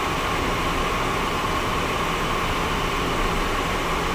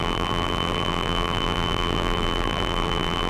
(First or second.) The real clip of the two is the first